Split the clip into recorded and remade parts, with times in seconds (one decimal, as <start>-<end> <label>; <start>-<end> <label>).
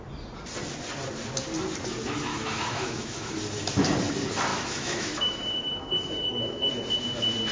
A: 0.0-2.3 recorded; 2.3-3.3 remade; 3.3-4.5 recorded; 4.5-6.7 remade; 6.7-7.5 recorded